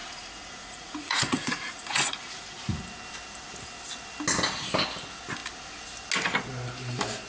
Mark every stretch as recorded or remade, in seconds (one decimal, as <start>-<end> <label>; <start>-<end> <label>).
0.0-2.6 remade; 2.6-7.3 recorded